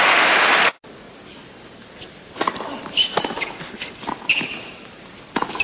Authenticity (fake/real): real